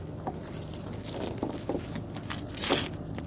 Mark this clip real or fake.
real